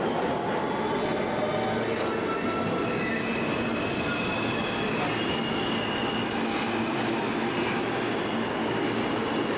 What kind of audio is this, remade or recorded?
recorded